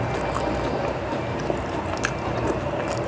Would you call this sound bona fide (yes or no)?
yes